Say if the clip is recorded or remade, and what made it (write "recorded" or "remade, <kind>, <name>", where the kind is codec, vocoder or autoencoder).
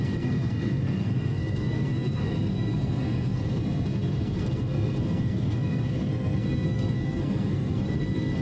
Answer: remade, codec, SNAC